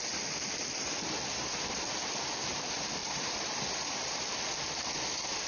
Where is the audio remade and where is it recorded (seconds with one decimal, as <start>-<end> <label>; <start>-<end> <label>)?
0.0-3.0 recorded; 3.0-4.4 remade; 4.4-5.5 recorded

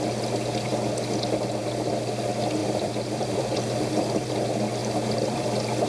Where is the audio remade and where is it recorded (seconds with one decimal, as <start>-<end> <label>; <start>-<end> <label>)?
0.0-2.6 recorded; 2.6-4.3 remade; 4.3-4.8 recorded; 4.8-5.9 remade